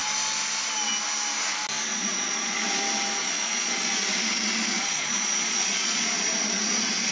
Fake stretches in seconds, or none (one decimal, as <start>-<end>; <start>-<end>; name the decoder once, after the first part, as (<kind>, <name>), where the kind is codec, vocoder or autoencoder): 1.9-2.8 (vocoder, Vocos); 3.2-7.1